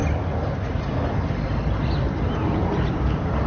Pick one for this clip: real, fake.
real